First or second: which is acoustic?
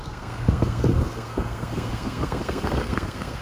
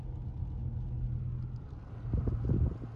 second